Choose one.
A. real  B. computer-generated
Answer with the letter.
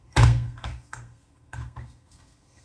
B